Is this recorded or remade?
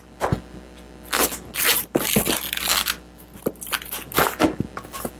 recorded